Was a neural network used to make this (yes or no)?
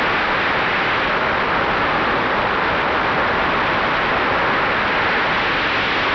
no